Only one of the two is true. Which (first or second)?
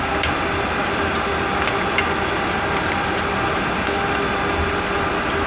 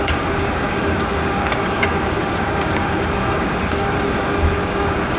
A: first